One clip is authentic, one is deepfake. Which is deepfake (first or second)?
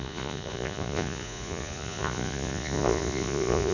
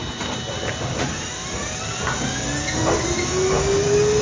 first